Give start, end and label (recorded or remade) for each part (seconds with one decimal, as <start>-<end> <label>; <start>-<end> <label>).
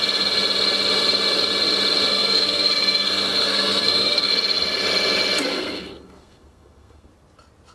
0.0-2.1 recorded; 2.1-4.3 remade; 4.3-5.5 recorded; 5.5-7.1 remade; 7.1-7.7 recorded